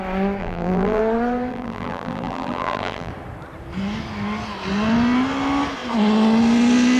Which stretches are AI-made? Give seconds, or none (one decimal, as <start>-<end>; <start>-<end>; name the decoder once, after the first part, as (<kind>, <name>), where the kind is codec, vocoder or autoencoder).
0.4-1.0 (vocoder, BigVGAN v2); 1.5-3.1